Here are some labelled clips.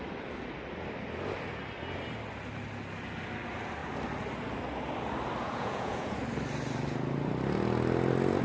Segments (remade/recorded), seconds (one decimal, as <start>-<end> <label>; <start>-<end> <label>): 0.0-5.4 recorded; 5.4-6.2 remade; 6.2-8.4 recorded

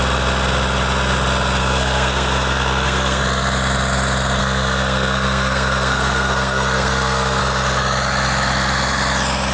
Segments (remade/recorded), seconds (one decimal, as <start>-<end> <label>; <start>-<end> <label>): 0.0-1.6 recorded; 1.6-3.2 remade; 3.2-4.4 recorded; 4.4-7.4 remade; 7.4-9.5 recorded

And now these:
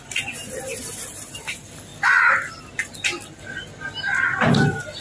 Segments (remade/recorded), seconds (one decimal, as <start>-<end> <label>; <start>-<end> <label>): 0.0-5.0 recorded

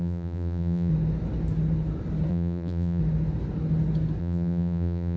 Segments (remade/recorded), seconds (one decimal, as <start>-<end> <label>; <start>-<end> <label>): 0.0-0.9 remade; 0.9-2.3 recorded; 2.3-3.0 remade; 3.0-4.2 recorded; 4.2-5.2 remade

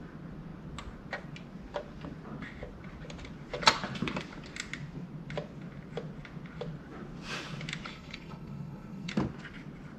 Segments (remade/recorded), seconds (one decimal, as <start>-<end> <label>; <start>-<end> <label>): 0.0-7.9 recorded; 7.9-9.1 remade; 9.1-10.0 recorded